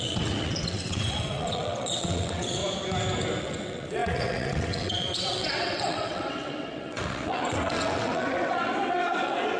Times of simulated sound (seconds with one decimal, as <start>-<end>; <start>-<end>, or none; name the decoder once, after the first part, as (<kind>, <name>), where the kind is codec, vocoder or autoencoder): 0.0-2.6 (vocoder, WaveNeXt); 3.4-9.6